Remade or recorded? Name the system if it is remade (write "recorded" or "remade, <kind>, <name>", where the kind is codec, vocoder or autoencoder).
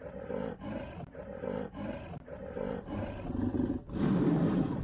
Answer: remade, vocoder, BigVGAN v2